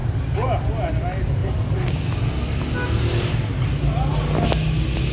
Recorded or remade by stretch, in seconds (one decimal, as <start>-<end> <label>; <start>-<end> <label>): 0.0-1.4 recorded; 1.4-1.9 remade; 1.9-5.1 recorded